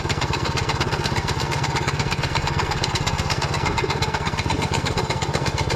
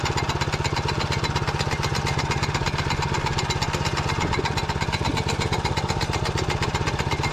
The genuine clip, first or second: second